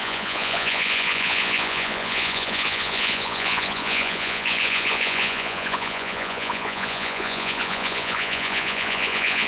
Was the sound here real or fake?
fake